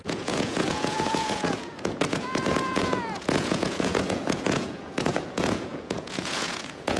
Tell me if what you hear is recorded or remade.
remade